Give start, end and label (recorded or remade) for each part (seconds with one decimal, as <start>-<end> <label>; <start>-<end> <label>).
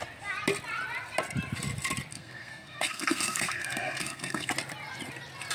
0.0-2.1 recorded; 2.1-4.5 remade; 4.5-5.5 recorded